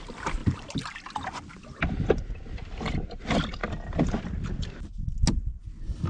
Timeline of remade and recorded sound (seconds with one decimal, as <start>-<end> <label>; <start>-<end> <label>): 0.0-6.1 recorded